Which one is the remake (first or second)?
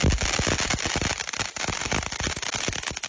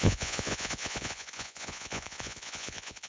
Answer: second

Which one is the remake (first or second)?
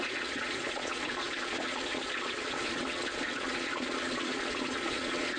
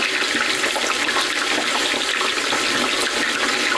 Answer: first